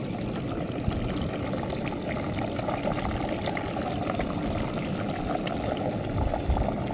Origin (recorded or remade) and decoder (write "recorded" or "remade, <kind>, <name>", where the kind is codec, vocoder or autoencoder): recorded